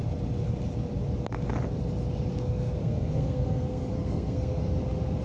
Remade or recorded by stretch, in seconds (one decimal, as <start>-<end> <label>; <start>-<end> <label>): 0.0-2.3 recorded; 2.3-4.6 remade; 4.6-5.2 recorded